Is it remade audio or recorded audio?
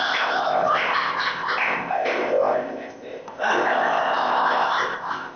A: remade